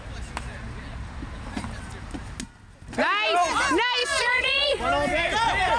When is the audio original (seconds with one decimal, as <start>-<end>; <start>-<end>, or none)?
0.0-4.0; 4.8-5.8